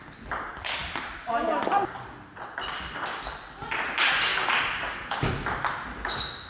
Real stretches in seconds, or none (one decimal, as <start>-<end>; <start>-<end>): 0.0-4.3; 5.3-6.5